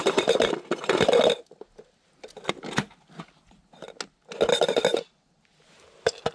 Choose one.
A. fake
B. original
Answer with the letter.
B